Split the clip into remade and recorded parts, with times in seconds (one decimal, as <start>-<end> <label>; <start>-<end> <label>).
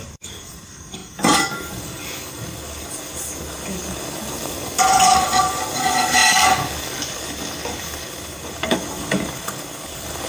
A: 0.0-10.3 remade